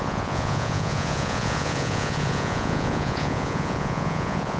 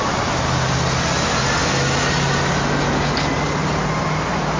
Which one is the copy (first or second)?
first